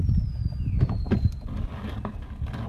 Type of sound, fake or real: real